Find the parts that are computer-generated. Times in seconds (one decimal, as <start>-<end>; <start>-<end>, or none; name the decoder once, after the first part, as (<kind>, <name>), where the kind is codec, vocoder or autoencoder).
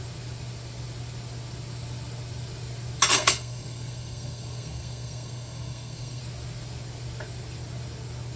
3.1-6.2 (codec, SNAC)